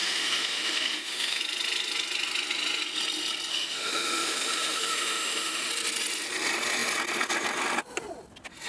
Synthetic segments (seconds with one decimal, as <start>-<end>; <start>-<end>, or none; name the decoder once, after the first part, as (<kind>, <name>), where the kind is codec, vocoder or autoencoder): 0.0-1.4 (autoencoder, DAC-VAE); 3.5-5.7

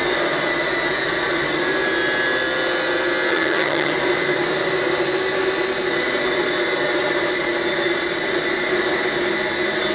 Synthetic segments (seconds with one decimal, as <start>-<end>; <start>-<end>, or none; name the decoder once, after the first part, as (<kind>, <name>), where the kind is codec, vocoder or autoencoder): 3.3-3.9 (vocoder, HiFi-GAN)

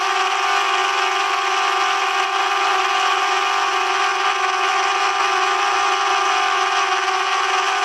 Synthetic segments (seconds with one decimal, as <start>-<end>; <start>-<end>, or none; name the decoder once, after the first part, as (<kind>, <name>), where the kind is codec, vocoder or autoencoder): none

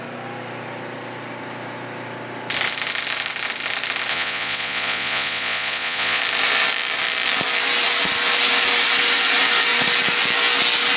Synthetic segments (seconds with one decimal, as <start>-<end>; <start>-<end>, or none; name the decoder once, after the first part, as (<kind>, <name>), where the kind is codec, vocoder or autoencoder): 4.1-6.2 (vocoder, Vocos)

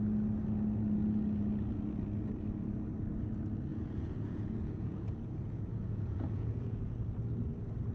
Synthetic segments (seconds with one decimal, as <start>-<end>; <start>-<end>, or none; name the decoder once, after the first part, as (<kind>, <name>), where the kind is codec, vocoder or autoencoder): 3.7-7.0 (vocoder, Vocos)